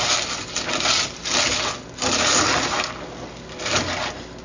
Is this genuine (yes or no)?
yes